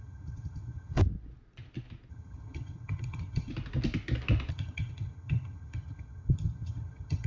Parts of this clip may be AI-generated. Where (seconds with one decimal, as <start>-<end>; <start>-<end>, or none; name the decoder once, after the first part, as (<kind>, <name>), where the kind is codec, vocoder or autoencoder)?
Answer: 0.0-1.0 (vocoder, HiFi-GAN); 2.1-3.5; 4.5-7.3